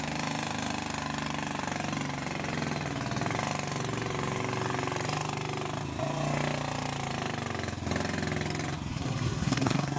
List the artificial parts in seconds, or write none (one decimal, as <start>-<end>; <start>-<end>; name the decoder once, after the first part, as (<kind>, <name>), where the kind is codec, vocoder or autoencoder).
8.9-10.0 (codec, SNAC)